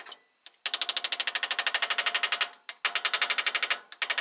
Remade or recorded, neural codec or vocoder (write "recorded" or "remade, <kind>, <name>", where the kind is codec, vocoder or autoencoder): recorded